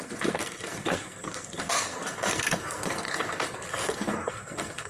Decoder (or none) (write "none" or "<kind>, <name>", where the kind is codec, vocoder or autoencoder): codec, SNAC